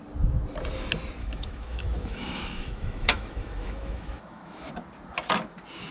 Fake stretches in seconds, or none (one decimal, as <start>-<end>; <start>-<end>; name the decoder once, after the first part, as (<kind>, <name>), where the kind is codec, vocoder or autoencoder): 1.2-4.7 (autoencoder, DAC-VAE)